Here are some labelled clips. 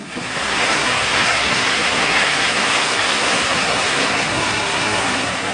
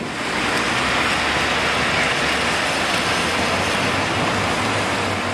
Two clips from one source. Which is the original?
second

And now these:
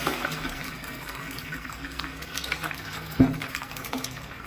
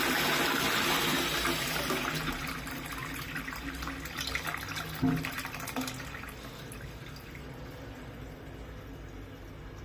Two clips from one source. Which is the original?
second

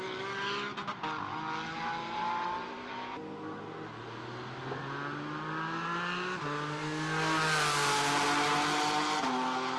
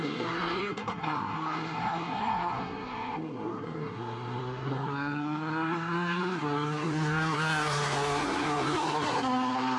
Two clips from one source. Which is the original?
first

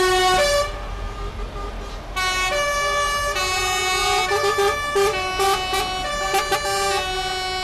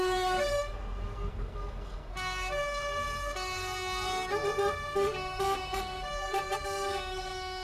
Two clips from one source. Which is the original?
first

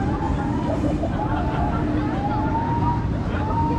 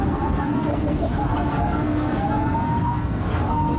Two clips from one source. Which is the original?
first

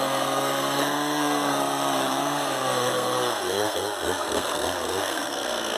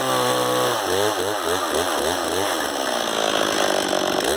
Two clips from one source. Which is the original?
second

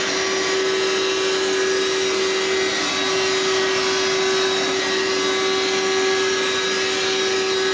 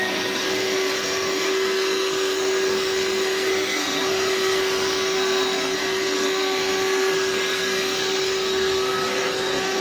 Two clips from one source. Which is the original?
first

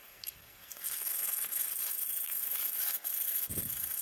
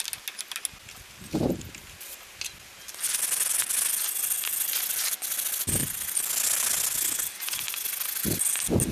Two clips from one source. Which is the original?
second